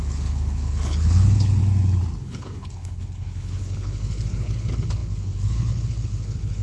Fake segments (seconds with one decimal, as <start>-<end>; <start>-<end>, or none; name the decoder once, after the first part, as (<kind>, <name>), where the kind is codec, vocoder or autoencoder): 0.0-1.6 (codec, HILCodec); 2.2-6.6